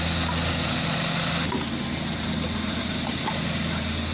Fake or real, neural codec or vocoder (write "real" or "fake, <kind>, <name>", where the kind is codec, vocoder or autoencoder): real